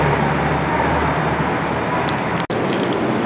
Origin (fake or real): real